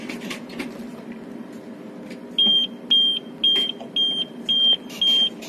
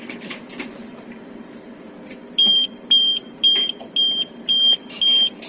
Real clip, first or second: first